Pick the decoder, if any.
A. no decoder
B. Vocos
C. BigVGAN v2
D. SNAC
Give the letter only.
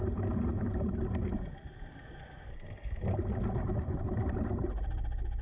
A